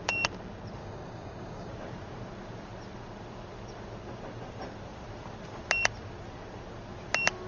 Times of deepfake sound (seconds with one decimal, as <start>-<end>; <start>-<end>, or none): 0.8-1.7